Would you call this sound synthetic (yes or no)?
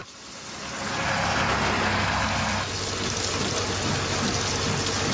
no